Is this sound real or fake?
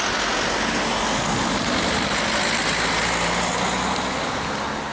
real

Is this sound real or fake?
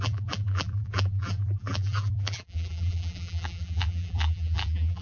fake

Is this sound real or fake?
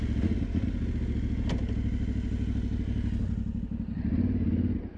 real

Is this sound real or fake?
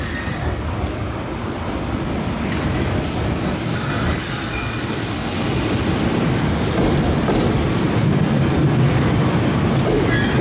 real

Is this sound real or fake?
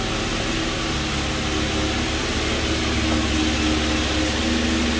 real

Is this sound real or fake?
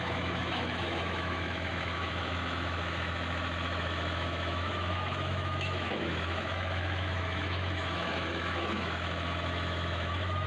fake